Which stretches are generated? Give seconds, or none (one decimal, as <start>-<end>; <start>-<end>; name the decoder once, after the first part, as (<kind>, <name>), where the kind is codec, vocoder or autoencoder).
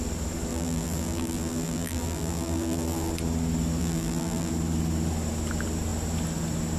0.5-3.1 (vocoder, BigVGAN v2); 3.8-4.5